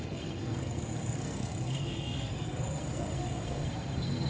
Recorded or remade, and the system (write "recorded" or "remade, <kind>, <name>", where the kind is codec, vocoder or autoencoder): remade, codec, SNAC